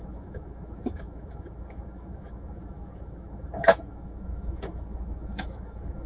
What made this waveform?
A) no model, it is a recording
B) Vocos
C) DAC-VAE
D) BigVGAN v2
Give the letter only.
C